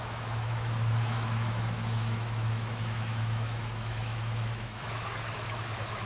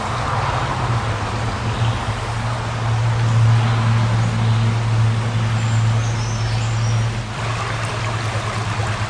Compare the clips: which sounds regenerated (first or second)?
first